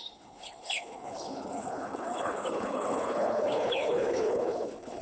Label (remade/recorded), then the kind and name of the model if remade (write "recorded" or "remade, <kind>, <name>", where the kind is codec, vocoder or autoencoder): remade, codec, HILCodec